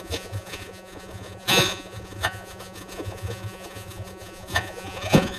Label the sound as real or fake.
fake